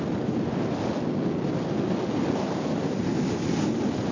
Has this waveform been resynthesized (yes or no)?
no